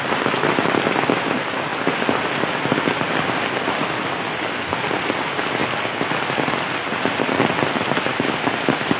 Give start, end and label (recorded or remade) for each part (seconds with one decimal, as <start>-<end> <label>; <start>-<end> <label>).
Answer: 0.0-1.7 recorded; 1.7-3.3 remade; 3.3-9.0 recorded